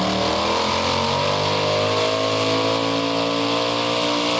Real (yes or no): yes